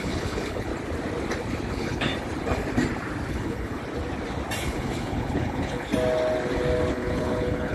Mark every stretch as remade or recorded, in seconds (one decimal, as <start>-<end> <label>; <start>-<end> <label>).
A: 0.0-0.7 remade; 0.7-1.7 recorded; 1.7-2.1 remade; 2.1-3.3 recorded; 3.3-3.8 remade; 3.8-4.6 recorded; 4.6-5.9 remade; 5.9-6.9 recorded; 6.9-7.7 remade